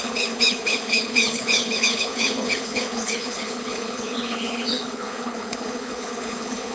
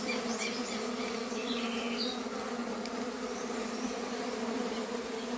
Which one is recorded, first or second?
second